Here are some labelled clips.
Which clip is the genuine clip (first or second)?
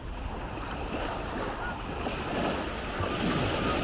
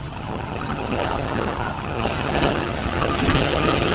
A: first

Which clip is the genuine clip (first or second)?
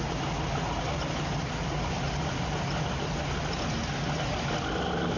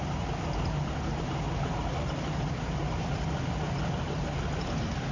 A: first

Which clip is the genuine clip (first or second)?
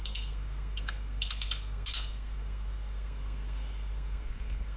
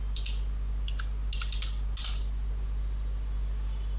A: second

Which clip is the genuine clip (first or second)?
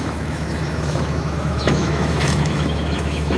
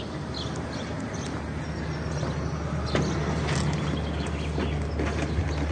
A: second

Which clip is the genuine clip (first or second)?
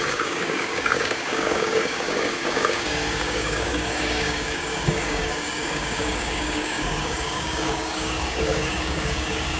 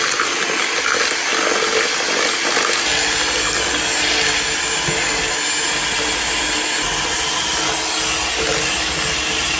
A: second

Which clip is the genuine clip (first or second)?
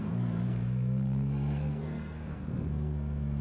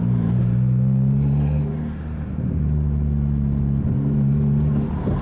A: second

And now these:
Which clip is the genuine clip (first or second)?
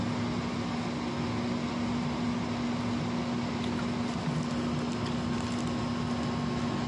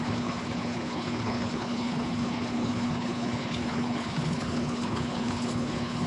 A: first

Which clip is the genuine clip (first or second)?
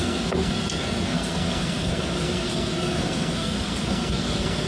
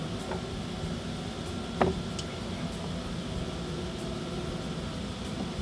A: second